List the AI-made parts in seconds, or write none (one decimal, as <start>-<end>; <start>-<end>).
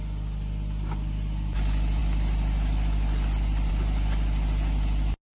none